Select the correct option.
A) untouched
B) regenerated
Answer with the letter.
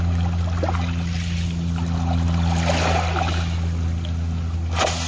A